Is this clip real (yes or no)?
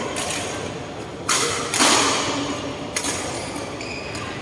yes